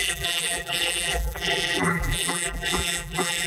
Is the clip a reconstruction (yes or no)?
yes